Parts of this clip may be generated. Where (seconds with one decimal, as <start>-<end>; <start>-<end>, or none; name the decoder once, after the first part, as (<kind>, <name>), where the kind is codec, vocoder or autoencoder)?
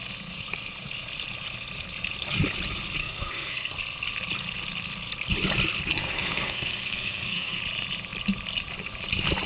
3.0-3.7 (codec, SNAC); 6.0-7.6